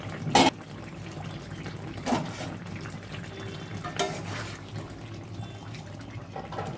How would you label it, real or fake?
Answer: real